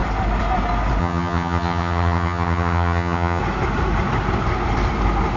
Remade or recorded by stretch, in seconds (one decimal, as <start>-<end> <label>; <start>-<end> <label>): 0.0-1.0 recorded; 1.0-3.4 remade; 3.4-5.4 recorded